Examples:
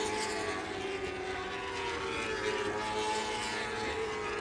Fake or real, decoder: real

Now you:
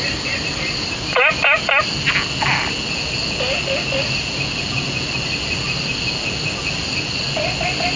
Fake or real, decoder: real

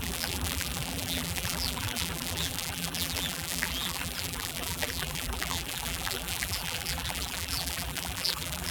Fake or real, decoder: fake, vocoder, BigVGAN v2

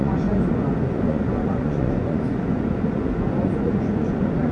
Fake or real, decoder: fake, vocoder, Vocos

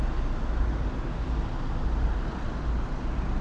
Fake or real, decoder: real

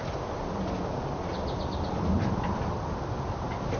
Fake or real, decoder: real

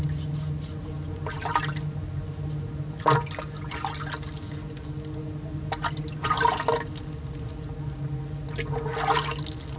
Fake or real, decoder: real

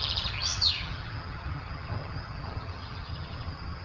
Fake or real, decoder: fake, vocoder, HiFi-GAN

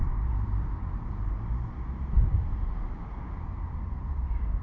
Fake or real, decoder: fake, vocoder, BigVGAN v2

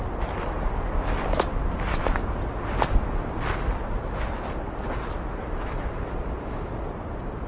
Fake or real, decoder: real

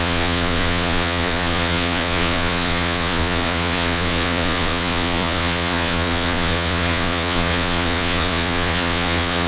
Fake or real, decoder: fake, vocoder, Vocos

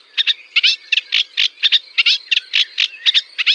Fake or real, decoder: real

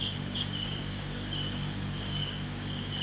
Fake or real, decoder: fake, codec, DAC